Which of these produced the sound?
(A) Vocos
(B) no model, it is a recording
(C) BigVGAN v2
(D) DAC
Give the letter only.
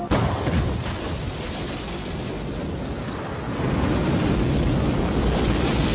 B